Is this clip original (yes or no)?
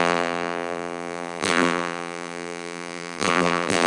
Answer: no